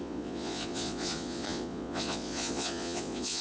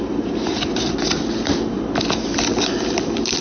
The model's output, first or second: first